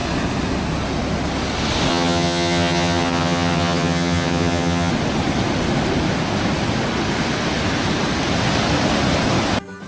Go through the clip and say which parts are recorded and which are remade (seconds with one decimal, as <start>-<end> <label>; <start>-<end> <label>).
0.0-1.9 recorded; 1.9-4.9 remade; 4.9-9.9 recorded